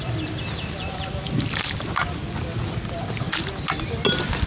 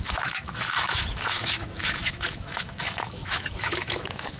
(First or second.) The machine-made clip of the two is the second